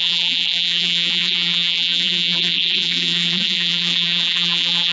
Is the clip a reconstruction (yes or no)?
yes